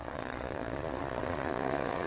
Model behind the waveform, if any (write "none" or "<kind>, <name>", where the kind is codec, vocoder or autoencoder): vocoder, Vocos